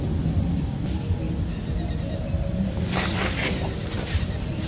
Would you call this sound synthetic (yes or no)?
no